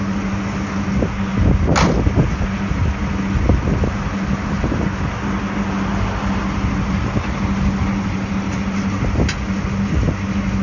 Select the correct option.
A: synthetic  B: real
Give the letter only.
B